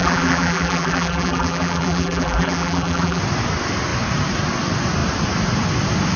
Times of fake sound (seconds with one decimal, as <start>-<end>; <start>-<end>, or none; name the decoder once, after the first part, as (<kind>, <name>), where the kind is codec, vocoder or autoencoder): 0.0-3.2 (vocoder, BigVGAN v2)